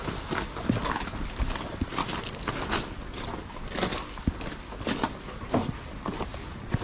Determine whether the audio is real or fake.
real